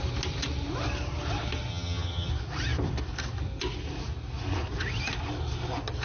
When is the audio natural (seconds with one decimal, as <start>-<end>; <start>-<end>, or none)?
0.0-1.7; 2.3-6.0